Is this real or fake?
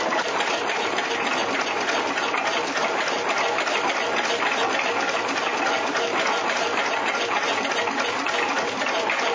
real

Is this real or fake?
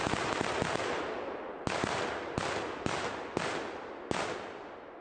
real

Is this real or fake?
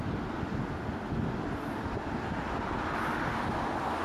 real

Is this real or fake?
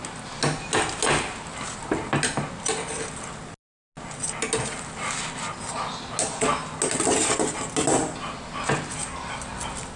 real